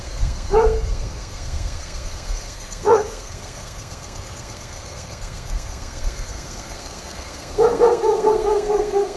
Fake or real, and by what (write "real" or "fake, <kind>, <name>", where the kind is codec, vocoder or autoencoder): fake, codec, SNAC